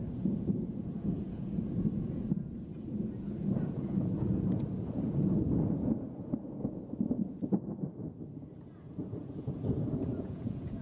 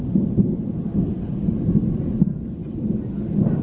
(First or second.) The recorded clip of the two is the second